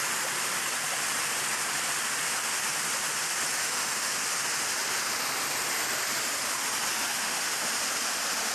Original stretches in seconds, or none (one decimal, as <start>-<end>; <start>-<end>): 0.0-3.6; 4.1-7.1; 7.7-8.5